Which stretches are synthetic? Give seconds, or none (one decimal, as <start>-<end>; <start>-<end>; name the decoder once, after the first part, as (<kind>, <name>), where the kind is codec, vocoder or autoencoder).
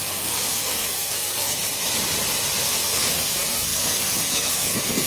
0.0-1.6 (codec, SNAC); 2.6-5.1